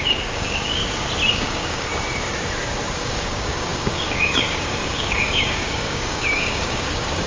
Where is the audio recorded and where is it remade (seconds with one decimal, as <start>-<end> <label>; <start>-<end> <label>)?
0.0-0.8 remade; 0.8-1.3 recorded; 1.3-1.9 remade; 1.9-3.0 recorded; 3.0-7.3 remade